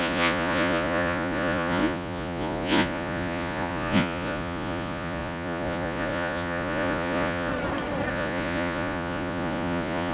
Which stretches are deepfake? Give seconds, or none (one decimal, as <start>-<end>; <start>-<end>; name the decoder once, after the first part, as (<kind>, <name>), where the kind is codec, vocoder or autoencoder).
0.0-7.5 (vocoder, Vocos); 8.1-10.1